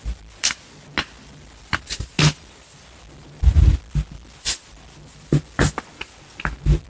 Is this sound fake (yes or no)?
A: no